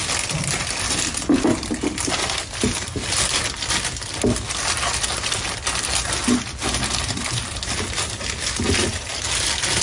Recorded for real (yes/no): yes